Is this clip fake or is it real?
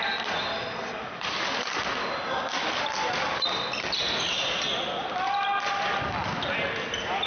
real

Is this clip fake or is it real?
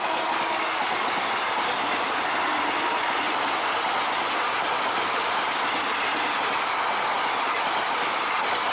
real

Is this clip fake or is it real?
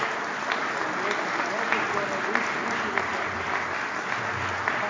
real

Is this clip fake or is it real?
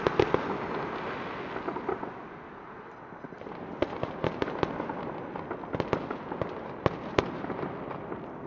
real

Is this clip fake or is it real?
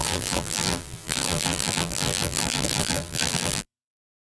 fake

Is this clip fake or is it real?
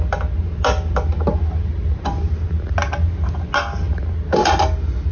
real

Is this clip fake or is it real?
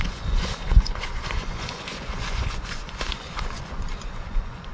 fake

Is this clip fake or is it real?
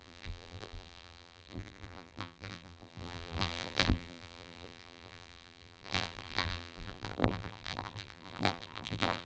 fake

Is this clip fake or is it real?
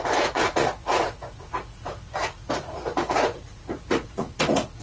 fake